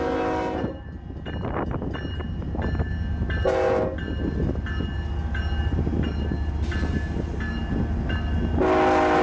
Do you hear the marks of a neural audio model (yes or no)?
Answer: no